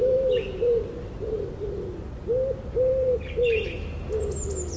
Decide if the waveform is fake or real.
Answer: real